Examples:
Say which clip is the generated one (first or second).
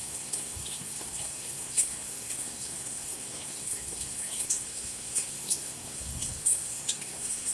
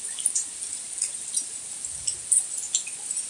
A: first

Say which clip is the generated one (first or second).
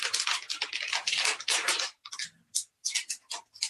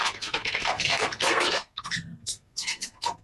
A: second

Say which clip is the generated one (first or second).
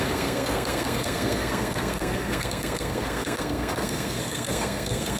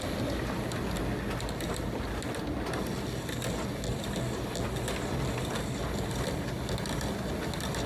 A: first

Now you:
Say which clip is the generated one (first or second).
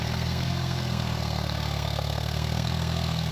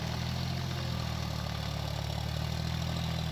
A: first